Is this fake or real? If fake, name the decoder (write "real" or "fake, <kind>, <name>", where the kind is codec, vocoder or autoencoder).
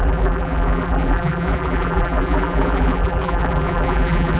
fake, vocoder, BigVGAN v2